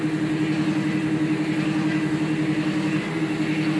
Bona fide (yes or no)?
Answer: yes